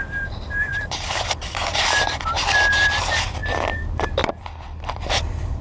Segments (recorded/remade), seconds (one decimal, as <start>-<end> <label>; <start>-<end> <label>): 0.0-5.6 remade